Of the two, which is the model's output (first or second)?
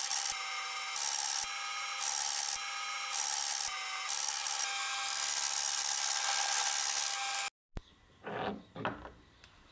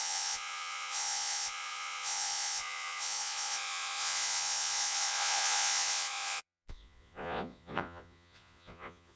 second